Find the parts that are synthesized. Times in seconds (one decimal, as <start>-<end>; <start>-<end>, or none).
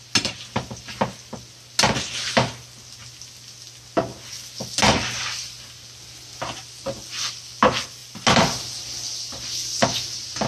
none